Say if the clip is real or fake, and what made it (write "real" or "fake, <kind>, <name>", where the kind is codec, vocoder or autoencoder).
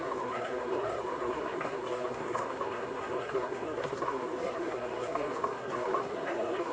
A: fake, codec, SNAC